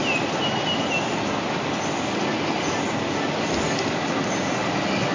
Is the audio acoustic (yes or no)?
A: yes